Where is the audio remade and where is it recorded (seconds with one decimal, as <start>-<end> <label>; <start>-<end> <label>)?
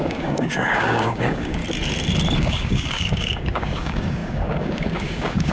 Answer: 0.0-1.6 remade; 1.6-2.4 recorded; 2.4-5.5 remade